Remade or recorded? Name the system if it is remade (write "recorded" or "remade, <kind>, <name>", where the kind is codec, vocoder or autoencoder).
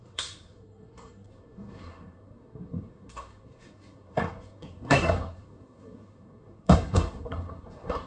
remade, codec, SNAC